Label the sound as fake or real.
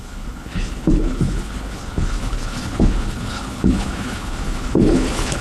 fake